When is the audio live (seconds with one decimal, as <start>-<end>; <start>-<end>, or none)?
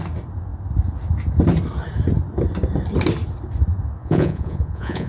0.0-4.0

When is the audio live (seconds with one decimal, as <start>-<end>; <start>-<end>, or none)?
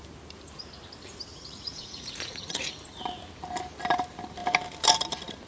0.0-1.3; 2.7-5.5